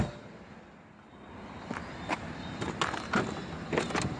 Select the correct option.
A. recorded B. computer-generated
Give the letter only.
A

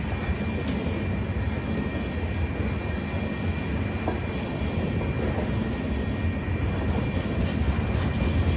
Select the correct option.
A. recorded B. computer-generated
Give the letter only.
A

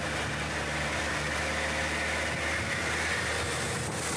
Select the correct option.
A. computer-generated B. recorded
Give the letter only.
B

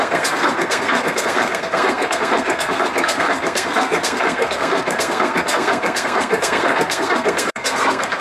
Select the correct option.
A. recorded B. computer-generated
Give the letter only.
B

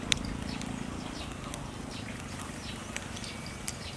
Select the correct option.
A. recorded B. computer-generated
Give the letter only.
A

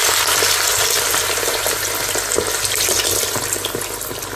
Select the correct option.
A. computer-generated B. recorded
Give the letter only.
B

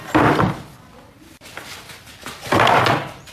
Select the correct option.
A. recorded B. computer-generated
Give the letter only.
A